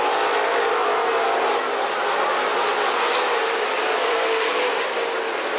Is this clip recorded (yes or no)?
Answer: yes